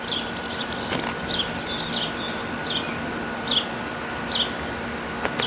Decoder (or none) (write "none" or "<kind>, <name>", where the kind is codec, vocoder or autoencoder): none